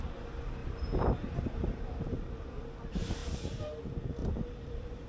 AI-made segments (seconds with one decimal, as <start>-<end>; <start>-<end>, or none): 0.6-1.8; 3.2-3.8; 4.2-5.1